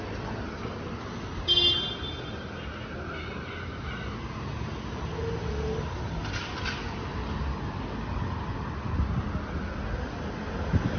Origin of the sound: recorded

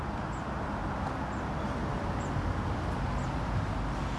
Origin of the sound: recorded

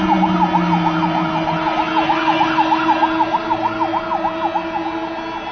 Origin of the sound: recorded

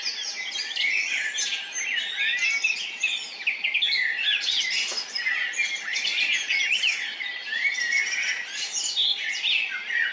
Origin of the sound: recorded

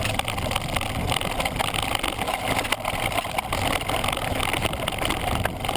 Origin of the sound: recorded